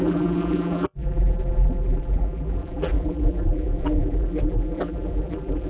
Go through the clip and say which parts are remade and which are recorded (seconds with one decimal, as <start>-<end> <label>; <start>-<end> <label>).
0.0-5.7 remade